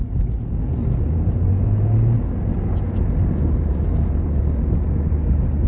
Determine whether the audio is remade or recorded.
recorded